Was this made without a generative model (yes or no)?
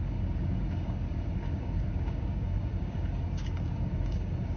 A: no